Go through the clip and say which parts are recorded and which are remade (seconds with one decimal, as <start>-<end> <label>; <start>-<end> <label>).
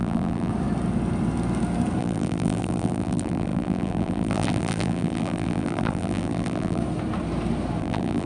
0.0-0.5 remade; 0.5-2.0 recorded; 2.0-6.8 remade; 6.8-7.8 recorded; 7.8-8.3 remade